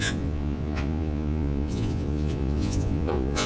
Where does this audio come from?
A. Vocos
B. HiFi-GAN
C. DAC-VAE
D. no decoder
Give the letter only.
A